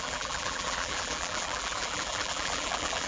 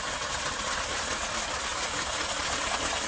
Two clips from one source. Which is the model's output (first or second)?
first